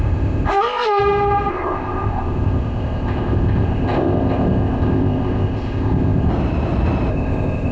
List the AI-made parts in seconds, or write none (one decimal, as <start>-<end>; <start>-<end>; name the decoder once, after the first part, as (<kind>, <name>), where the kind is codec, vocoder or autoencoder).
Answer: 0.0-1.0 (codec, ZipCodec); 1.5-6.3; 7.1-7.7

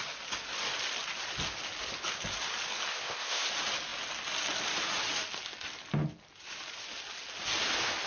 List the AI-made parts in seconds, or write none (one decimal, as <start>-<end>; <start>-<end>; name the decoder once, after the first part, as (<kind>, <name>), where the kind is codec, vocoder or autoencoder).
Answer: 2.9-3.5 (codec, ZipCodec)

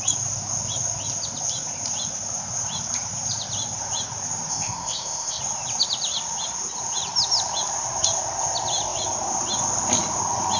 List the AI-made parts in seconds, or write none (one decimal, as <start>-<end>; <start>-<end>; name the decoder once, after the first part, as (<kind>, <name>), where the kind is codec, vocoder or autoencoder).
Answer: 4.5-5.4 (codec, ZipCodec)